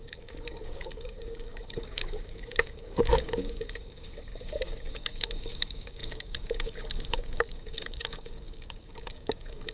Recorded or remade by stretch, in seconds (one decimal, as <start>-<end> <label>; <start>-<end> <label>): 0.0-9.7 remade